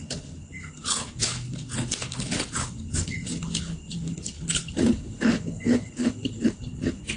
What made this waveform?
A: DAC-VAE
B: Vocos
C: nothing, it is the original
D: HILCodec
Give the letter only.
D